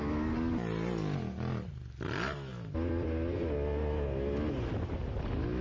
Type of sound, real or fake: real